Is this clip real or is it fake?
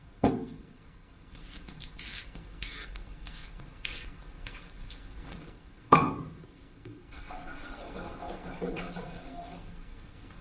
fake